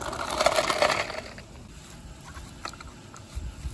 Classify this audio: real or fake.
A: real